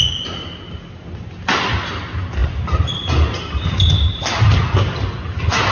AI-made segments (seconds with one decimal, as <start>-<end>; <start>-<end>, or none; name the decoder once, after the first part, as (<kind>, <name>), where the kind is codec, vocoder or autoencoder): none